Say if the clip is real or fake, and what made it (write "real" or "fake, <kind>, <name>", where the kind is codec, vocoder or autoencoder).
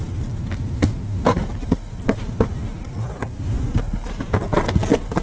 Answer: real